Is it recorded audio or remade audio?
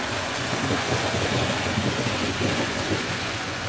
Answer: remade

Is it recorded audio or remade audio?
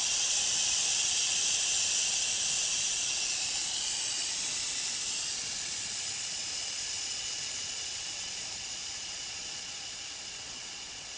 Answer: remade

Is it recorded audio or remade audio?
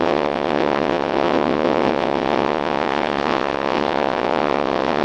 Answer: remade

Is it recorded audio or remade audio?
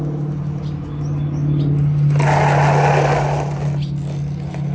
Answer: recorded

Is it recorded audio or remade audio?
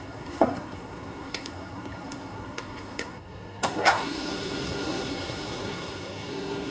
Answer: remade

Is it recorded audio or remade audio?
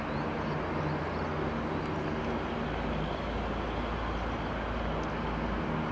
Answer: recorded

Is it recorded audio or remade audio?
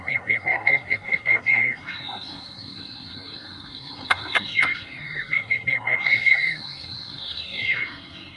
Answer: remade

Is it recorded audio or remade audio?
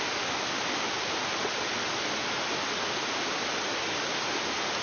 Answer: recorded